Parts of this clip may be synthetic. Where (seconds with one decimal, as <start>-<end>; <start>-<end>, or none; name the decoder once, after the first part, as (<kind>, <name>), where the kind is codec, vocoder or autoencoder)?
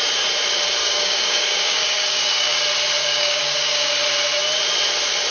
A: 0.8-2.6 (codec, DAC); 3.0-3.9